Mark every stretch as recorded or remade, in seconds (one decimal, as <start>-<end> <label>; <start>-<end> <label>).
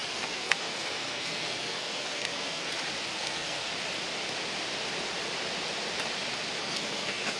0.0-2.7 remade; 2.7-3.1 recorded; 3.1-3.7 remade; 3.7-6.6 recorded; 6.6-7.4 remade